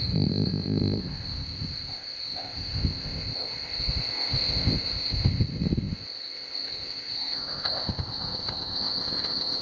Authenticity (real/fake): fake